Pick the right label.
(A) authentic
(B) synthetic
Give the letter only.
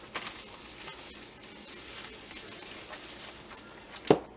A